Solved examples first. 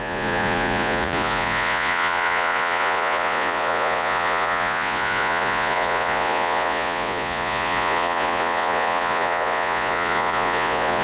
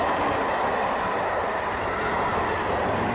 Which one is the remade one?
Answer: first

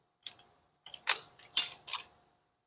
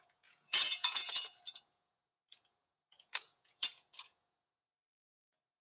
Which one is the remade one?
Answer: second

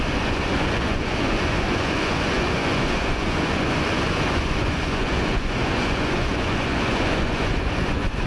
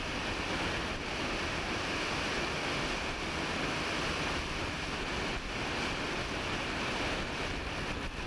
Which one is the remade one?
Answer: first